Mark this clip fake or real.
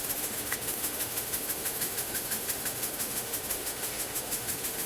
fake